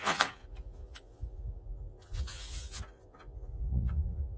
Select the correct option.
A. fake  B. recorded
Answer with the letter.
A